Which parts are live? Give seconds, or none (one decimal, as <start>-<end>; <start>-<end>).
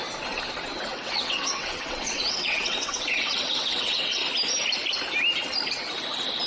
0.0-0.9; 4.2-6.5